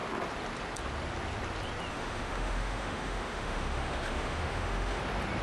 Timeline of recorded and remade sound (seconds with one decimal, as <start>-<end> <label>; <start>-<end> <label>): 0.0-1.9 recorded; 1.9-5.0 remade; 5.0-5.4 recorded